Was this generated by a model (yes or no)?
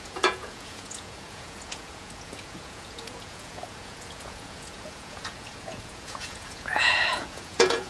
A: yes